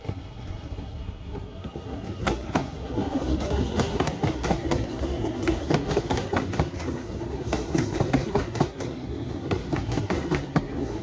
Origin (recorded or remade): remade